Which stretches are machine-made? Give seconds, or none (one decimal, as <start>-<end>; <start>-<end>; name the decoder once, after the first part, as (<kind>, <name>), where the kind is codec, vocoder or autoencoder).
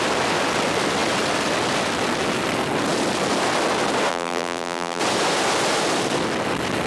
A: 4.1-5.0 (vocoder, BigVGAN v2)